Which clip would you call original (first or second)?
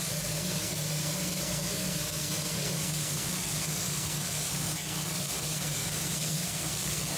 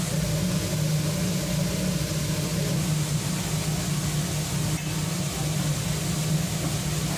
second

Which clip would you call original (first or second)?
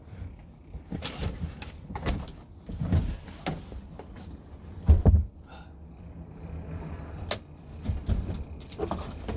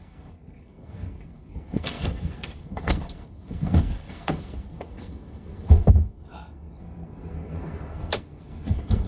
first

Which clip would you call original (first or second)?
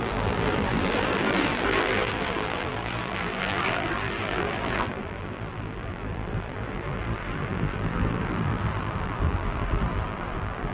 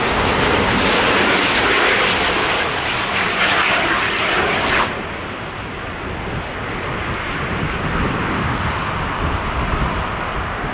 second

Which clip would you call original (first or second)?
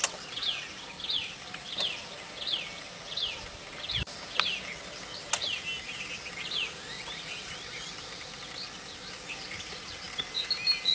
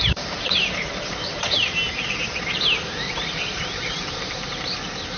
first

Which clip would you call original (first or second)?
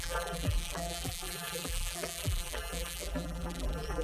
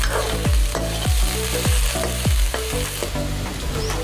second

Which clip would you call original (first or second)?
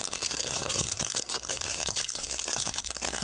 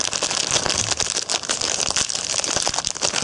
second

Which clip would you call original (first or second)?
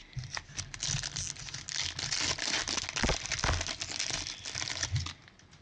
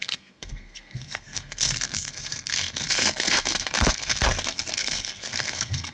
first